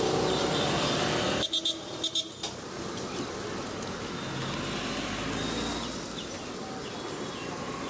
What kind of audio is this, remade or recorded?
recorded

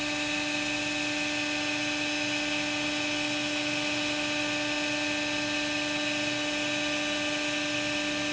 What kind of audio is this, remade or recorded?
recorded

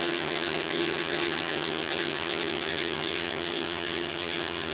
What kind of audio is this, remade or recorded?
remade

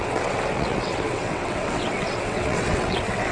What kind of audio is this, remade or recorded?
remade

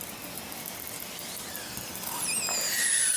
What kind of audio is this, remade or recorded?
recorded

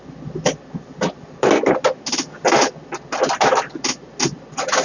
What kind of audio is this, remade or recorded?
recorded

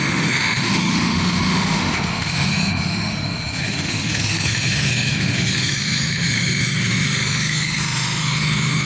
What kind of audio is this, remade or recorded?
remade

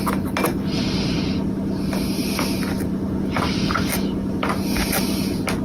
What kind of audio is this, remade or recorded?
recorded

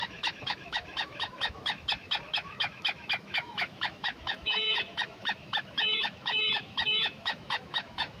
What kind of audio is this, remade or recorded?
remade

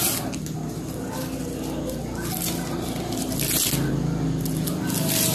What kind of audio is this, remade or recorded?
recorded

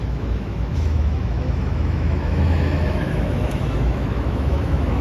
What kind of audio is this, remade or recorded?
remade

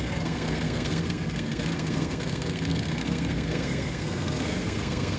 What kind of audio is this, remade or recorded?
remade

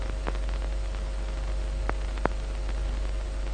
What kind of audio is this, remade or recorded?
recorded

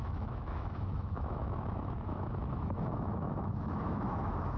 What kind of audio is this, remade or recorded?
remade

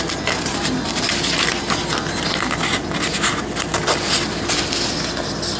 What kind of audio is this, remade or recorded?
recorded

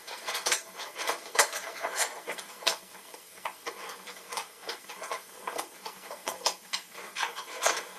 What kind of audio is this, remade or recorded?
remade